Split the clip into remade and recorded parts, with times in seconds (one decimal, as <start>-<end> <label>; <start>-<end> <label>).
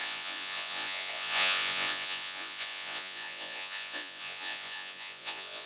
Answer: 0.0-5.7 remade